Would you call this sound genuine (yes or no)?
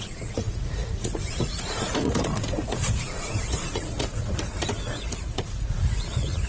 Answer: no